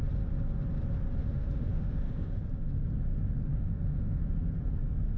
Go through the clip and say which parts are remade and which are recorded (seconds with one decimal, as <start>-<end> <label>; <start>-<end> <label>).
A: 0.0-1.2 recorded; 1.2-2.4 remade; 2.4-3.5 recorded; 3.5-4.2 remade; 4.2-5.2 recorded